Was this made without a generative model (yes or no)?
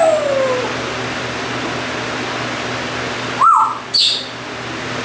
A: yes